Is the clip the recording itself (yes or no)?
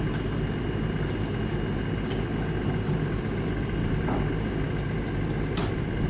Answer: yes